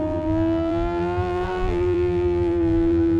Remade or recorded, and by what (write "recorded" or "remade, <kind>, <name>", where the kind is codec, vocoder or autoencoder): remade, vocoder, BigVGAN v2